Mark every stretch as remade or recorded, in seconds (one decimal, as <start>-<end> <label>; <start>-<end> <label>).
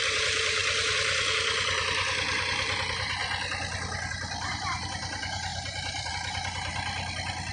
0.0-3.2 remade; 3.2-4.1 recorded; 4.1-6.7 remade; 6.7-7.5 recorded